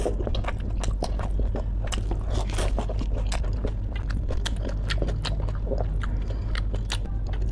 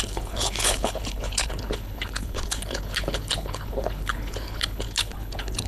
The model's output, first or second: second